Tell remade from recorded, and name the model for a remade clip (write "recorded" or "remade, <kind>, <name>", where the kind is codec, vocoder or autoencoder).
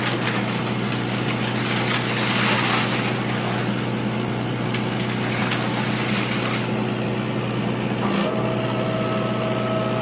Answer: recorded